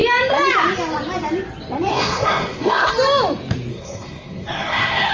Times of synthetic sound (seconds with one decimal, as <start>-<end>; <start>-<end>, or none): 1.9-2.9; 3.7-5.1

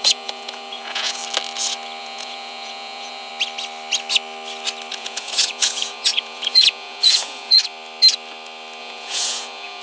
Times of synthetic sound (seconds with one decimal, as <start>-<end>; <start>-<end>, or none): 0.0-1.2; 2.0-3.3; 4.9-7.6; 8.8-9.8